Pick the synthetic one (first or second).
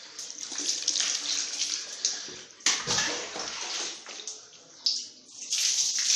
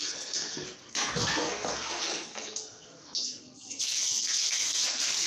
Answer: second